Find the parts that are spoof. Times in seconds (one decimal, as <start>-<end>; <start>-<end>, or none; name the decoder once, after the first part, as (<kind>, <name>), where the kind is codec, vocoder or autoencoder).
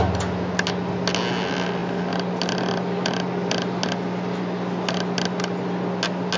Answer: none